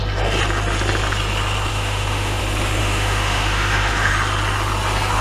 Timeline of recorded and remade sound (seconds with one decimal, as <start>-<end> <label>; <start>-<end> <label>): 0.0-1.7 recorded; 1.7-2.4 remade; 2.4-2.8 recorded; 2.8-4.1 remade; 4.1-5.2 recorded